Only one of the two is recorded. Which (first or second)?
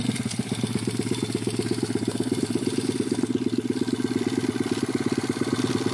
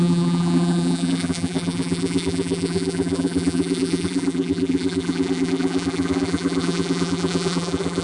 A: first